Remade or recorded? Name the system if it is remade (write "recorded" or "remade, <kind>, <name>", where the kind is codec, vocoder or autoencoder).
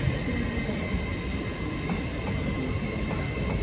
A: recorded